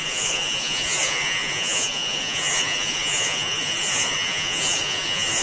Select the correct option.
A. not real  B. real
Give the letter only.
A